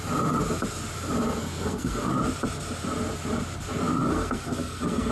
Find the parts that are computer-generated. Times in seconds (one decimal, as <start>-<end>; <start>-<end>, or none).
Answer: 1.4-2.1; 4.1-5.1